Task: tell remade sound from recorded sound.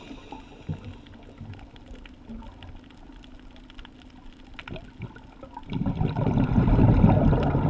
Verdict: recorded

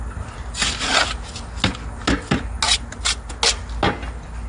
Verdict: recorded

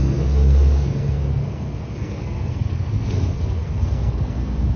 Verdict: remade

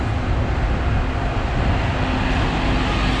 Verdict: recorded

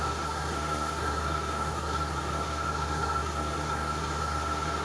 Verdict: remade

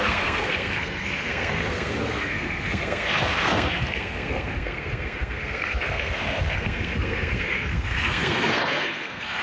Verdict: remade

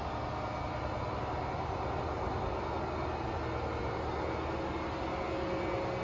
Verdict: recorded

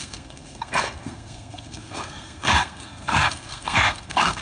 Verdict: remade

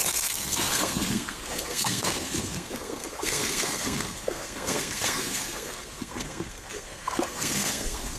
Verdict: remade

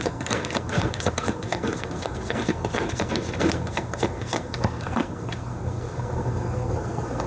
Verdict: remade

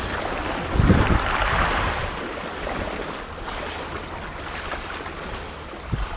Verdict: recorded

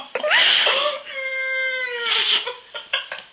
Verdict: recorded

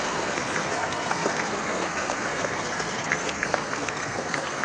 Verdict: remade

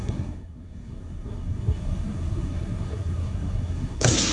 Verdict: remade